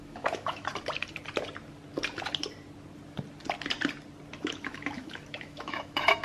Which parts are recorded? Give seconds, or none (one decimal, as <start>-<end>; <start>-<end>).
0.7-4.4